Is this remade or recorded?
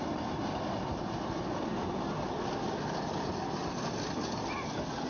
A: recorded